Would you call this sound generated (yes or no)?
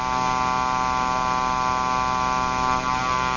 no